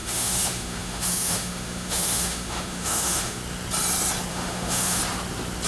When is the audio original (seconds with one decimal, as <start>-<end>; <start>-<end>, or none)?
3.4-4.3; 5.0-5.7

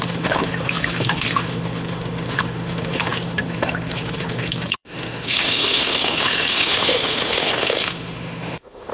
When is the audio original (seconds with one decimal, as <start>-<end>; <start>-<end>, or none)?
none

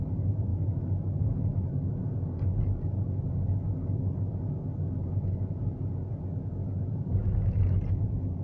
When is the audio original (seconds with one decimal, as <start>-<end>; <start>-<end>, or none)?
0.0-6.6; 7.6-8.4

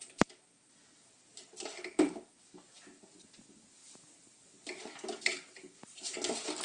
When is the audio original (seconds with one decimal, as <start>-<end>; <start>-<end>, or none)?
0.0-6.6

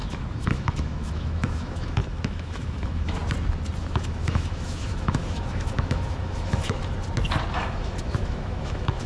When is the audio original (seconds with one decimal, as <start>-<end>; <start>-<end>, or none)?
3.2-3.8; 6.8-7.5

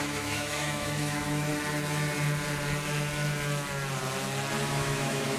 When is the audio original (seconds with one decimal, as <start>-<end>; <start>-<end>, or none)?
1.5-4.7

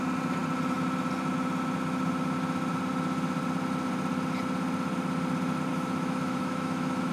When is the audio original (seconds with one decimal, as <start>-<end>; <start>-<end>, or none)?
0.0-5.7